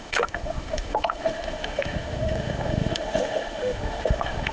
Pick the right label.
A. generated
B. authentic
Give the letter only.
A